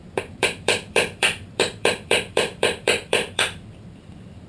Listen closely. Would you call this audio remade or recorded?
remade